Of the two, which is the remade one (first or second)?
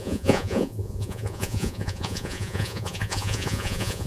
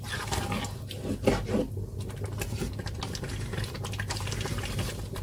first